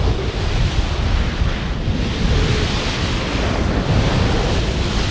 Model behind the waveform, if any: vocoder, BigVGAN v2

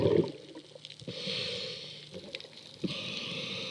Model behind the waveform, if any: none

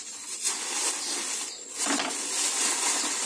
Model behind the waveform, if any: none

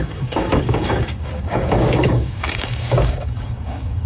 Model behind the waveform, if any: codec, DAC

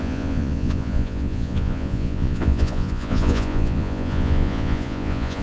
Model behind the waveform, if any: vocoder, Vocos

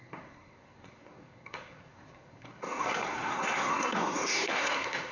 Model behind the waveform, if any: codec, SNAC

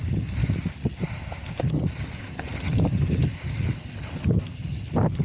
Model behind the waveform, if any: none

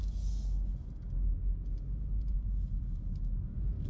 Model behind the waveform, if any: none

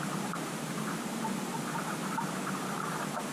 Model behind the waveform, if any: none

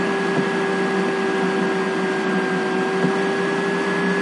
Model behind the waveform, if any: none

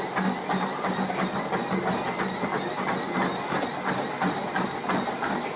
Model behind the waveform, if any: none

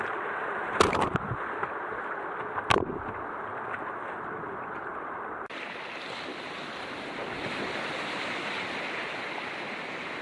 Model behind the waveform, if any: none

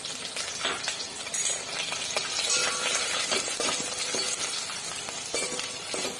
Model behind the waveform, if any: none